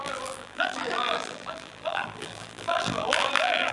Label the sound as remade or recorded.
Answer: remade